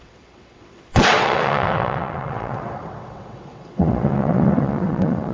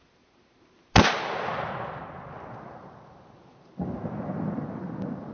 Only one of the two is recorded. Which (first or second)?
second